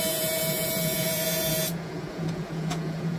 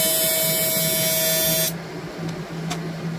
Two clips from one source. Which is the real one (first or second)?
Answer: second